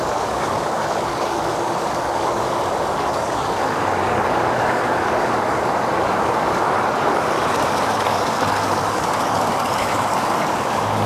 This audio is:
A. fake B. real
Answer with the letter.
A